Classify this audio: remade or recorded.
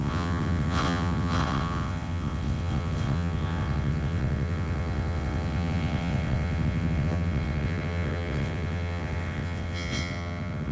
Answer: remade